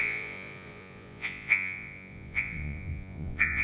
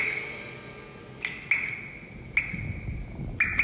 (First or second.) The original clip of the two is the second